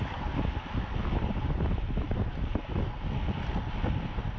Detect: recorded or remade recorded